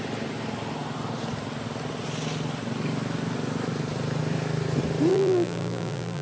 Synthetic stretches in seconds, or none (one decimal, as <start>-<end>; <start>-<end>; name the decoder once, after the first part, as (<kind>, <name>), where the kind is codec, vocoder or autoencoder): 5.1-6.2 (vocoder, BigVGAN v2)

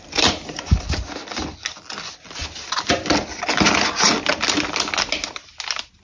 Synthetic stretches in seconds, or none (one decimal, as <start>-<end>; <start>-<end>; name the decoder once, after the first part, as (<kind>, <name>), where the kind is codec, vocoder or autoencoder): none

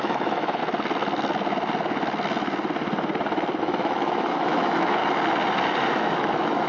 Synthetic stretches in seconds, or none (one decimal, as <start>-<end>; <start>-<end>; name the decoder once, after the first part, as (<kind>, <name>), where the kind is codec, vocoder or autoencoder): 0.0-0.6 (autoencoder, DAC-VAE); 3.6-5.0; 5.9-6.7

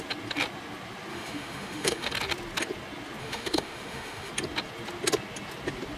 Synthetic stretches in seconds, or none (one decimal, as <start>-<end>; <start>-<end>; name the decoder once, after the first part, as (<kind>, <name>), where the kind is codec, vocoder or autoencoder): 1.1-2.1 (autoencoder, DAC-VAE); 3.2-4.3

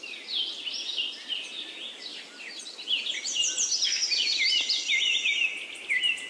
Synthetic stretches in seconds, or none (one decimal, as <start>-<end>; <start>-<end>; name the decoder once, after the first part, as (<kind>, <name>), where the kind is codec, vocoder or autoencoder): none